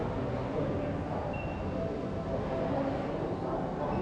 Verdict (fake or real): real